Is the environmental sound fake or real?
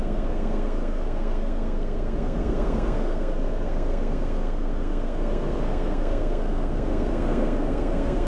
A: fake